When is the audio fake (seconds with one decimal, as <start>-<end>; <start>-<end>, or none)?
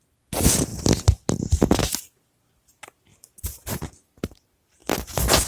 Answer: none